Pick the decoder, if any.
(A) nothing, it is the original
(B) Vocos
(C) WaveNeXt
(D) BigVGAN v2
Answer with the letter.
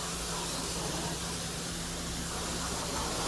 A